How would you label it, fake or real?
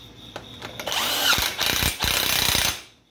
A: real